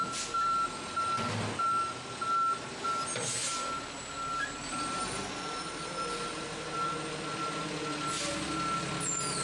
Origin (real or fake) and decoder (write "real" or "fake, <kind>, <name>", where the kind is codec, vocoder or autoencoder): real